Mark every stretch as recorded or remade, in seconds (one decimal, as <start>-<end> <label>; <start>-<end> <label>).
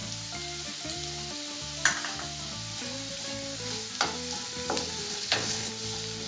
0.0-5.1 recorded; 5.1-5.7 remade; 5.7-6.3 recorded